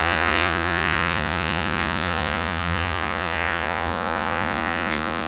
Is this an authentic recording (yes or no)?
no